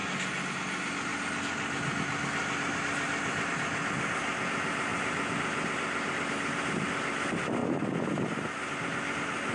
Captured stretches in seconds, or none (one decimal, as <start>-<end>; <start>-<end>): 0.0-9.5